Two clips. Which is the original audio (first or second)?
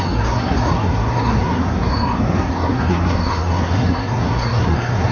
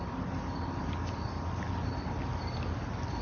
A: second